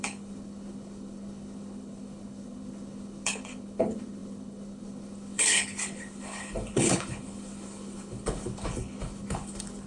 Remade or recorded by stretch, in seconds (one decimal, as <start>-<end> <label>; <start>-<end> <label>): 0.0-9.9 remade